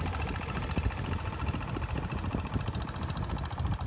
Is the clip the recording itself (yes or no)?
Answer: yes